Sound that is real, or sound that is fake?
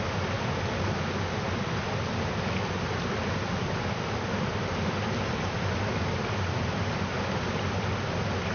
real